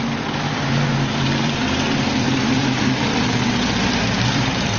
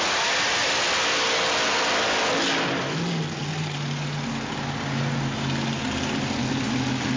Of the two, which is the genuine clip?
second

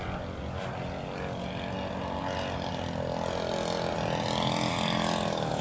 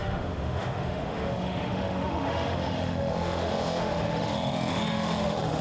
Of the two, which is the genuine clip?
first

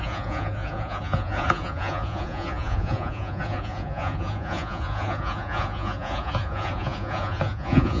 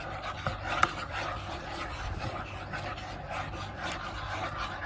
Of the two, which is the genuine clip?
second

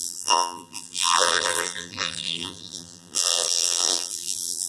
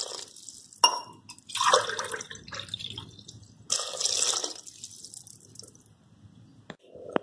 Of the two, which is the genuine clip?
second